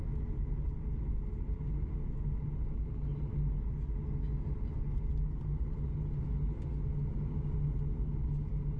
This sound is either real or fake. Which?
real